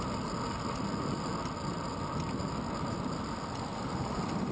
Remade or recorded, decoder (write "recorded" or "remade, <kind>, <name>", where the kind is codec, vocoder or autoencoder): recorded